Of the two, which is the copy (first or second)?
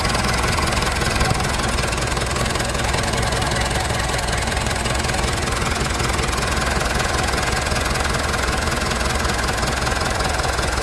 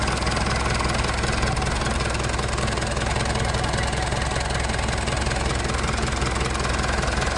first